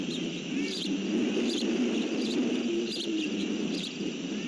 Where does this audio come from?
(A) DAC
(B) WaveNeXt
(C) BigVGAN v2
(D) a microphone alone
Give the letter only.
C